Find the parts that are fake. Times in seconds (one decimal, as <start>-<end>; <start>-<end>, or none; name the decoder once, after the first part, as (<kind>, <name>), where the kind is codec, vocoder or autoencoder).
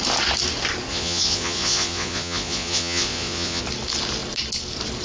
0.9-3.6 (vocoder, Vocos)